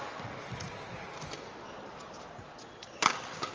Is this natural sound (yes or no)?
yes